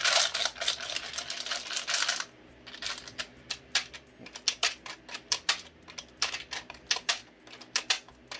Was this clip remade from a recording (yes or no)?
no